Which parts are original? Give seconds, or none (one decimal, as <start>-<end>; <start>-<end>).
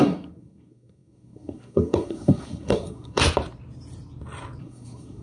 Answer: 3.2-4.6